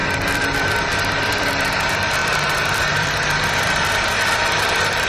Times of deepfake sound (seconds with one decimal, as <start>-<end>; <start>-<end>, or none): 0.0-5.1